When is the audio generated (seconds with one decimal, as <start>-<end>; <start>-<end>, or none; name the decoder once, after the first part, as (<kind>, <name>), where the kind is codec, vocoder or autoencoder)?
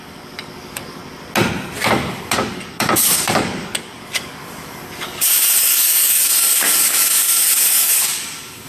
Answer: 0.0-1.0 (codec, DAC); 2.1-8.7